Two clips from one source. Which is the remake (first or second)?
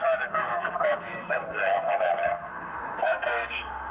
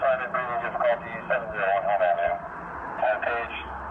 first